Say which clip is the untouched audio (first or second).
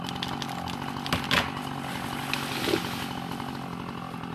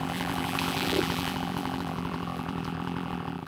first